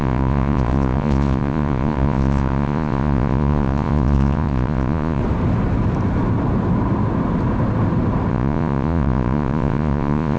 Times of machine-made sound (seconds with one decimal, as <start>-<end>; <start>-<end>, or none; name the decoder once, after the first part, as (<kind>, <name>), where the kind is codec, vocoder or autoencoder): 0.0-5.2 (vocoder, Vocos); 8.3-10.4